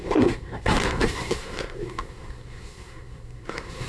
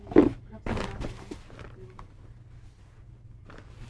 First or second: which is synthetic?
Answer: first